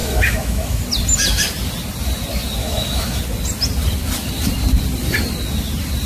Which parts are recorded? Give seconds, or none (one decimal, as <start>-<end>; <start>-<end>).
0.8-2.6; 3.2-6.1